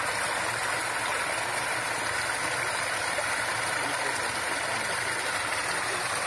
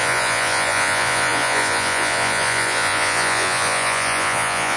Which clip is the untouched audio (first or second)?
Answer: first